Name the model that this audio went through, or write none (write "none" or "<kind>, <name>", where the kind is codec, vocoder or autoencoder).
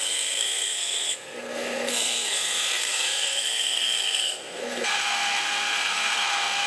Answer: codec, SNAC